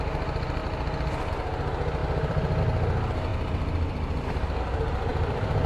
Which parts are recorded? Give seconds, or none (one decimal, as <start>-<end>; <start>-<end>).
0.0-2.0; 2.6-3.3; 4.6-5.1